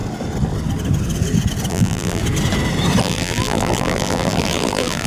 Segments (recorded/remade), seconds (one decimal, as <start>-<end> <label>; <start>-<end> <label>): 0.0-1.7 recorded; 1.7-2.2 remade; 2.2-3.0 recorded; 3.0-5.1 remade